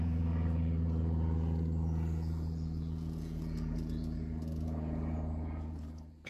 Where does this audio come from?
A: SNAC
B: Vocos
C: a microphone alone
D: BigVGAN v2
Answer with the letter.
B